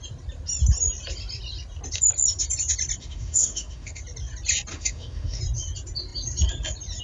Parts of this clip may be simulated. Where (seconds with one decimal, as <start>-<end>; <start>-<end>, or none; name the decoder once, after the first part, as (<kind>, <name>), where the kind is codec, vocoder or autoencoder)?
3.0-4.0 (autoencoder, DAC-VAE); 4.7-5.4